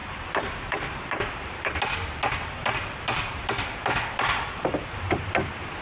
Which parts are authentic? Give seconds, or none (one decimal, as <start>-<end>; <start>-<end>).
1.8-2.6; 5.1-5.8